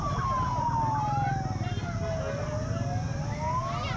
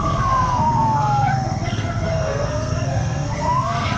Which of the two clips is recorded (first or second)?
first